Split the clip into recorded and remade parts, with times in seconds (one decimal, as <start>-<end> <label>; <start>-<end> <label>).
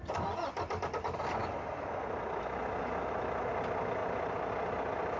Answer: 0.0-5.2 recorded